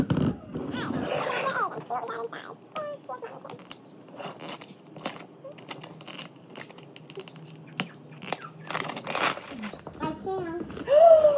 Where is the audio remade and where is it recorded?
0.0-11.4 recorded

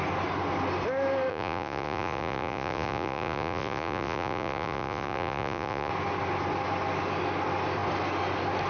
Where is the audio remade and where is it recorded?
0.0-1.3 recorded; 1.3-5.9 remade; 5.9-8.7 recorded

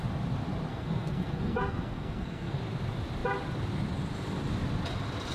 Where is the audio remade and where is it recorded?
0.0-0.7 recorded; 0.7-2.6 remade; 2.6-5.3 recorded

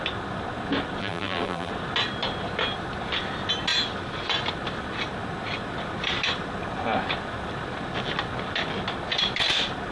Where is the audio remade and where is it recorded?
0.0-1.0 recorded; 1.0-1.7 remade; 1.7-9.9 recorded